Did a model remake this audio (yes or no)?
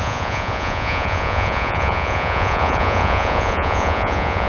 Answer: yes